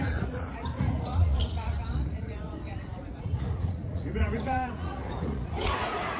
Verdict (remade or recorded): remade